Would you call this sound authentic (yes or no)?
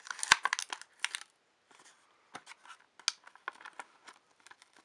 yes